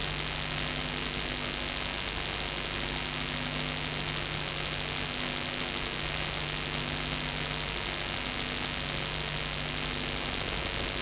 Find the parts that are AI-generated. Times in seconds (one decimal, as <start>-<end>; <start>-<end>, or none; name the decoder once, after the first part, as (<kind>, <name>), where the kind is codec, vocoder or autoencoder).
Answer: none